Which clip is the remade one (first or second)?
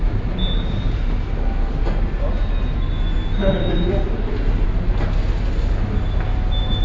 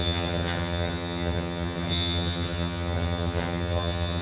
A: second